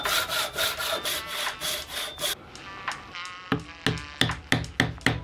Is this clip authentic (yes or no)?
yes